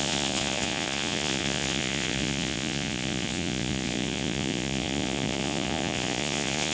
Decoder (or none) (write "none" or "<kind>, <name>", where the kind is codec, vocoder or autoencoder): vocoder, Vocos